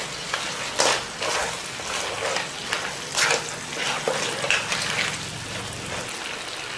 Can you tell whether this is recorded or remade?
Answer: recorded